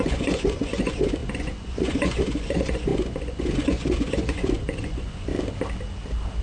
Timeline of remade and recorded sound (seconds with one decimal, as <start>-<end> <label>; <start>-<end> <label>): 0.0-5.3 remade; 5.3-6.4 recorded